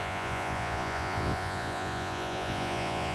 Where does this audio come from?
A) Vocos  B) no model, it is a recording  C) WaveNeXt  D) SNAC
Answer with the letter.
A